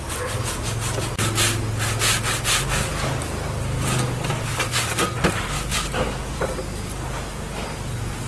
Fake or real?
real